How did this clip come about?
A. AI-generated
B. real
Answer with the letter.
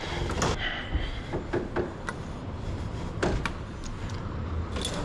B